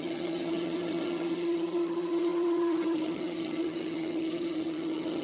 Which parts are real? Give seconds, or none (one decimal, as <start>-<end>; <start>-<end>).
none